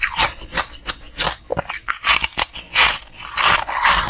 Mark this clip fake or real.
real